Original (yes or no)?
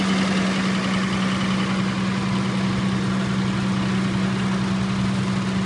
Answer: yes